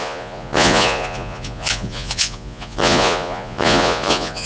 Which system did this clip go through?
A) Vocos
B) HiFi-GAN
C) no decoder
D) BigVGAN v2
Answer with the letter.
A